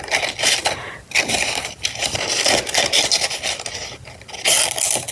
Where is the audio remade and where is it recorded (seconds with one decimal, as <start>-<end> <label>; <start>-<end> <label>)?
0.0-0.6 recorded; 0.6-2.5 remade; 2.5-5.1 recorded